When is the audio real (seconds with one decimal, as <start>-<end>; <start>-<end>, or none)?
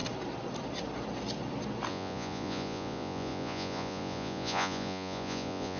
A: 0.0-1.9